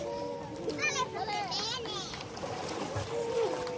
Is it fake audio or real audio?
real